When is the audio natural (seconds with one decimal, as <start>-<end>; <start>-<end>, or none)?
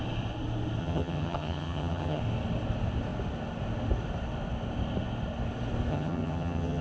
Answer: 0.0-0.8; 2.2-5.9